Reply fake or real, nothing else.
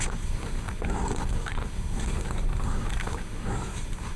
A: fake